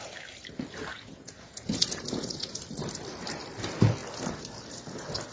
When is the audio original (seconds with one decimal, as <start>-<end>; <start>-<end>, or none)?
0.0-0.9; 2.6-5.3